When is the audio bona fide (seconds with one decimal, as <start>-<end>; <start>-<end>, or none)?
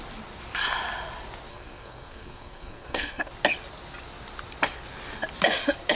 0.0-1.5; 3.3-6.0